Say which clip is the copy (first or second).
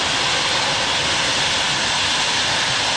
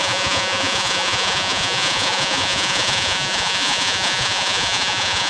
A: second